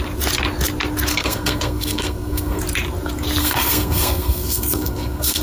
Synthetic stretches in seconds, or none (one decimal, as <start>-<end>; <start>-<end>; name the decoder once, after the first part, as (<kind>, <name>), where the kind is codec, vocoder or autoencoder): 1.1-2.6 (codec, SNAC); 3.4-5.4